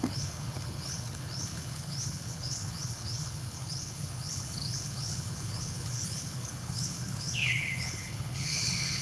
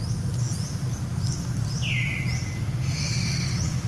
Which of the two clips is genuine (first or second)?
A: second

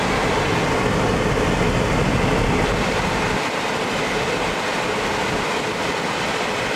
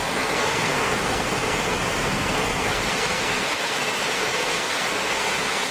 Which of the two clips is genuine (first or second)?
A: first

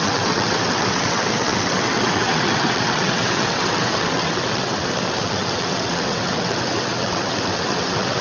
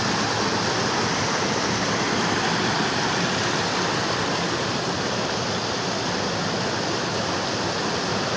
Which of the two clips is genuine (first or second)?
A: second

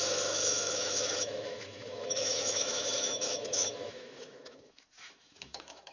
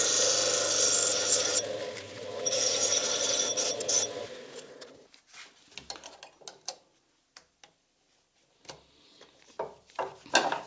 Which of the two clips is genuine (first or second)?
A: second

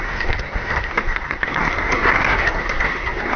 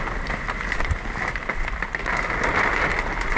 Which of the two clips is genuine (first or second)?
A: second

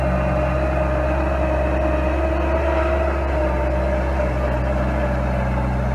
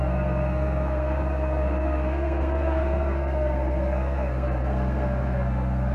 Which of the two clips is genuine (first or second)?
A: first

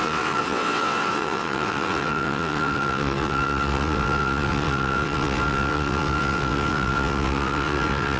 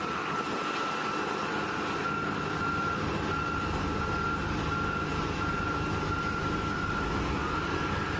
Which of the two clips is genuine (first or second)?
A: second